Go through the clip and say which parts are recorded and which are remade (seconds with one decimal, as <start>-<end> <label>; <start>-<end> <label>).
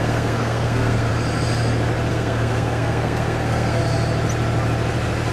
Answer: 0.0-1.1 remade; 1.1-2.1 recorded; 2.1-3.8 remade; 3.8-5.3 recorded